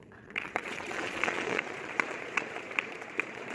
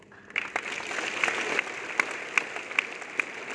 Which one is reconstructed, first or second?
first